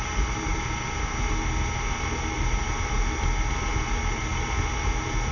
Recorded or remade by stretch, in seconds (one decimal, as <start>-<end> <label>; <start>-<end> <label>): 0.0-5.3 recorded